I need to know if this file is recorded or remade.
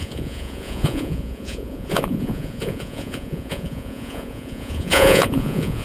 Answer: remade